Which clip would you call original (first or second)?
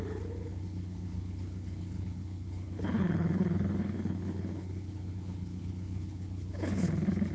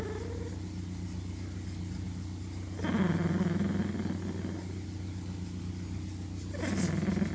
second